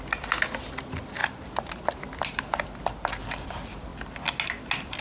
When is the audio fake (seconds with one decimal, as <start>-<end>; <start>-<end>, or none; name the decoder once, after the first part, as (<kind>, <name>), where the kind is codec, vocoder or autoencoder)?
none